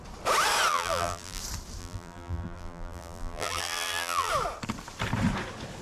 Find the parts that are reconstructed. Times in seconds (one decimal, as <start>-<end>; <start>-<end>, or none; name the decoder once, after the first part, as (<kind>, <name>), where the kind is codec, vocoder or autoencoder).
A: 0.7-1.4 (vocoder, BigVGAN v2); 1.8-4.3